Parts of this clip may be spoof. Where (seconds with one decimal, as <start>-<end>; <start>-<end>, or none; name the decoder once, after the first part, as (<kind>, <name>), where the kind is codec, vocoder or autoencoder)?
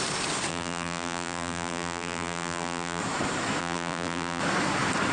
0.5-3.0 (vocoder, BigVGAN v2); 3.6-4.4